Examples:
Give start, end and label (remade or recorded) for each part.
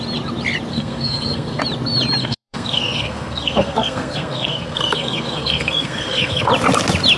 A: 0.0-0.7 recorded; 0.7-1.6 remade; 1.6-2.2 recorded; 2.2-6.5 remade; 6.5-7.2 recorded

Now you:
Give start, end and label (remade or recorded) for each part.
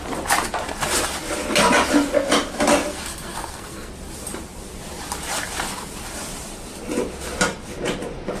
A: 0.0-2.9 recorded; 2.9-3.9 remade; 3.9-8.4 recorded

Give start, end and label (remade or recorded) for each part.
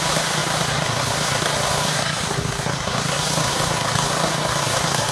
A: 0.0-5.1 remade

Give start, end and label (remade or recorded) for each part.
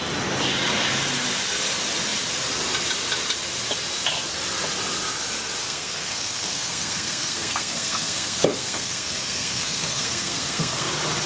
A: 0.0-5.6 recorded; 5.6-10.9 remade; 10.9-11.3 recorded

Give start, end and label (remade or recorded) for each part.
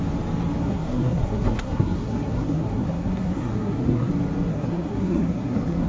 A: 0.0-0.6 recorded; 0.6-4.1 remade; 4.1-4.5 recorded; 4.5-5.9 remade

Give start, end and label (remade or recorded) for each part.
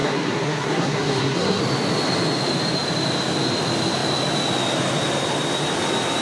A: 0.0-1.6 remade; 1.6-6.2 recorded